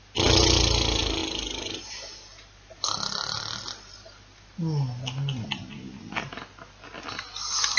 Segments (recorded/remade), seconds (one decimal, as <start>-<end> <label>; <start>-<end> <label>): 0.0-7.8 recorded